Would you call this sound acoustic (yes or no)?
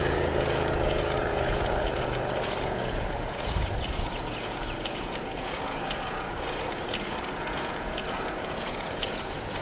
no